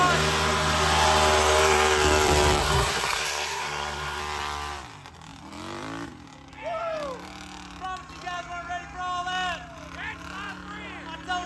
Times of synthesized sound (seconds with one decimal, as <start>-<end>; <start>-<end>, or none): 2.6-4.2